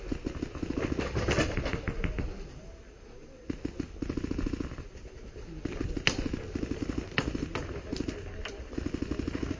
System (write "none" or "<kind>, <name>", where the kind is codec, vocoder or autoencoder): none